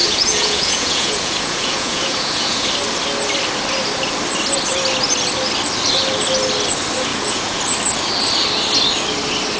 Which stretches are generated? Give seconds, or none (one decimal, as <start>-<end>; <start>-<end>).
0.0-2.7; 7.1-7.6